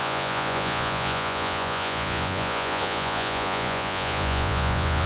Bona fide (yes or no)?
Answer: no